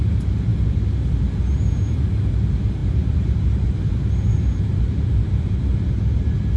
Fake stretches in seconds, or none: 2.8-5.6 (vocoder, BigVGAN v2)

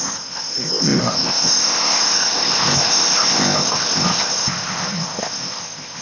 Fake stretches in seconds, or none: 0.0-6.0 (codec, ZipCodec)